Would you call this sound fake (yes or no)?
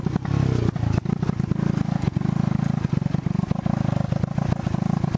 no